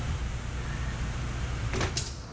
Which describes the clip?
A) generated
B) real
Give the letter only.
B